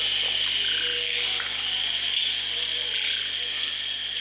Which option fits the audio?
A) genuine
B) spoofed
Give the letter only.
A